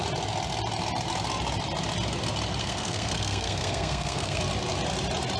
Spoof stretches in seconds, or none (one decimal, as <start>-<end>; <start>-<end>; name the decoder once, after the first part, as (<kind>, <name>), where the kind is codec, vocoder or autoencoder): 2.6-4.4 (codec, SNAC)